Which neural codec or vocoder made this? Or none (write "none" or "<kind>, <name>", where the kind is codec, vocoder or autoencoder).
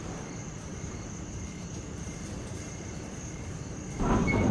vocoder, BigVGAN v2